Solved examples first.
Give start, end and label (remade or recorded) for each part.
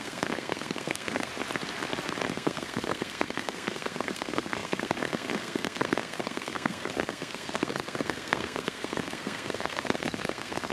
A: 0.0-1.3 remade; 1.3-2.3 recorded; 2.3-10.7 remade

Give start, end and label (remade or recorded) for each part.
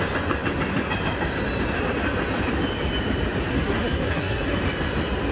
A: 0.0-3.5 recorded; 3.5-4.5 remade; 4.5-5.3 recorded